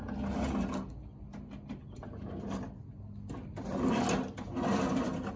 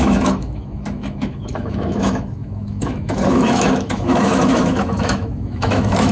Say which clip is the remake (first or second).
second